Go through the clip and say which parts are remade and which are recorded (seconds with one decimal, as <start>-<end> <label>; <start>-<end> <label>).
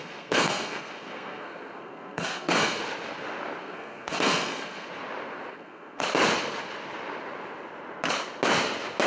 0.0-2.8 remade; 2.8-3.6 recorded; 3.6-4.9 remade; 4.9-5.5 recorded; 5.5-6.0 remade; 6.0-9.1 recorded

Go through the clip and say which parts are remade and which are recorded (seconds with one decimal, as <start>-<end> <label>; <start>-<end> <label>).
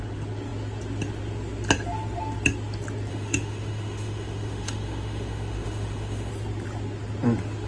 0.0-3.1 recorded; 3.1-6.3 remade; 6.3-7.7 recorded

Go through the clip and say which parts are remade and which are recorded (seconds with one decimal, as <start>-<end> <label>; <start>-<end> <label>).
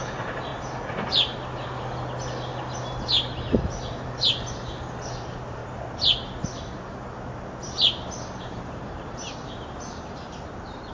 0.0-0.5 remade; 0.5-4.5 recorded; 4.5-5.6 remade; 5.6-8.4 recorded; 8.4-10.9 remade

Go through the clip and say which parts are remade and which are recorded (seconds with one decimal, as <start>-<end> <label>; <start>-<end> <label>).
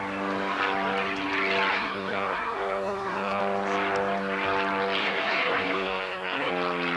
0.0-1.7 recorded; 1.7-3.4 remade; 3.4-5.0 recorded; 5.0-6.5 remade; 6.5-7.0 recorded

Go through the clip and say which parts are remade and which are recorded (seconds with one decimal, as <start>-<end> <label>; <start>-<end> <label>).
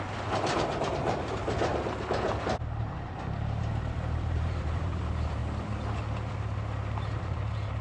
0.0-1.7 remade; 1.7-2.8 recorded; 2.8-5.4 remade; 5.4-7.2 recorded; 7.2-7.8 remade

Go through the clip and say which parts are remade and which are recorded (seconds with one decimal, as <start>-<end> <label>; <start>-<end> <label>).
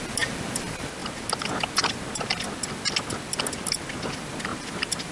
0.0-5.1 recorded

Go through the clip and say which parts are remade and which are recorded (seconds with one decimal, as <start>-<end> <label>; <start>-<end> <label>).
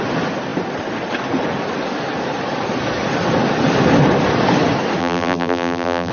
0.0-5.0 recorded; 5.0-6.1 remade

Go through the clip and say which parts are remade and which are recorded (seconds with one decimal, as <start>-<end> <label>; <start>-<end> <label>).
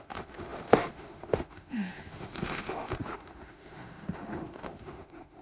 0.0-5.4 remade